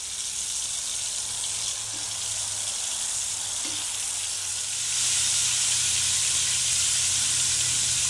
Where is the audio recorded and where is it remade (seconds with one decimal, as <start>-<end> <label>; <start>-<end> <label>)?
0.0-8.1 recorded